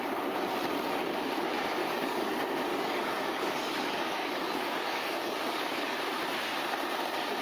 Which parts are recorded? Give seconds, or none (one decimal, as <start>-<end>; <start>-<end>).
0.0-1.8; 2.3-2.7; 6.0-7.4